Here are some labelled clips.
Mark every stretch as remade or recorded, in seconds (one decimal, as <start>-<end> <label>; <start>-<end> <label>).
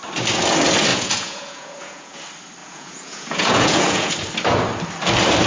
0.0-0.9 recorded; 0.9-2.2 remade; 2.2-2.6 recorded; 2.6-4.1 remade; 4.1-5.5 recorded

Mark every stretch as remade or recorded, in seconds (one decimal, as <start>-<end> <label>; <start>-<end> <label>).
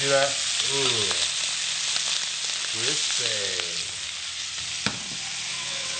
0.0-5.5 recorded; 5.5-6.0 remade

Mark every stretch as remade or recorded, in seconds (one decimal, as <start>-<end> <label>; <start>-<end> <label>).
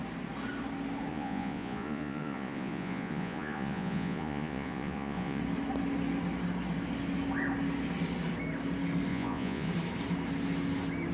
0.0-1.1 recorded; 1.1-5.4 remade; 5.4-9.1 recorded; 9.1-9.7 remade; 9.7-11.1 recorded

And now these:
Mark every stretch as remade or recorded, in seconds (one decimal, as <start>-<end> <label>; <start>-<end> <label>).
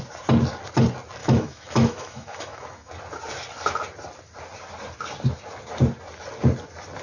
0.0-1.2 recorded; 1.2-2.9 remade; 2.9-7.0 recorded